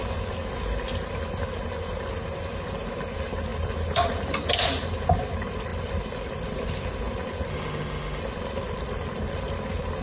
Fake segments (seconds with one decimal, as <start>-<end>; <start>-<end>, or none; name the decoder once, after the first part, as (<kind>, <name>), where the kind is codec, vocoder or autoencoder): 7.5-8.2 (autoencoder, DAC-VAE)